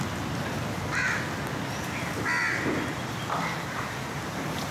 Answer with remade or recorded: recorded